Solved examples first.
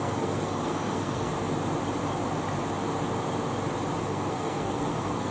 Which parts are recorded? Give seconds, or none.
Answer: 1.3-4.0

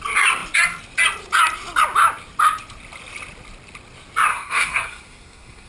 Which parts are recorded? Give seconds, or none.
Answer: 0.0-4.3

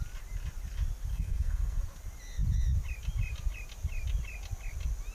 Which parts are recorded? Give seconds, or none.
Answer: 0.0-1.1; 1.8-5.1

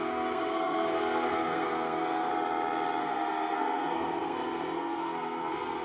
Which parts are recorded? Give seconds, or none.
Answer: 2.3-3.0

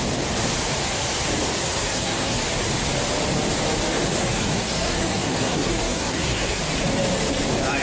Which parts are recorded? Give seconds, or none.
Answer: 0.0-1.6; 2.4-4.2; 6.6-7.8

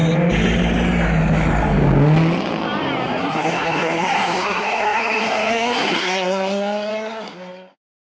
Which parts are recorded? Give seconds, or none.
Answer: 0.0-3.2